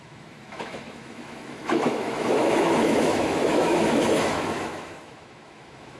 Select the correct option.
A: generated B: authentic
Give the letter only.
A